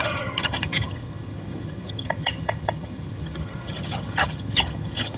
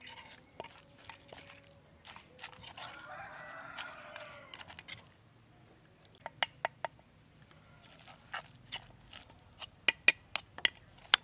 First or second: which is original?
second